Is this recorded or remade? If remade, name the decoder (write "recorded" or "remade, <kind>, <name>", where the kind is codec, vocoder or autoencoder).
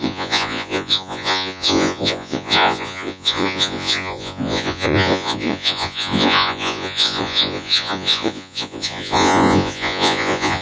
remade, vocoder, Vocos